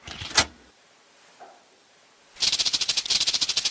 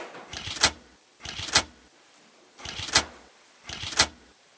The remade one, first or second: second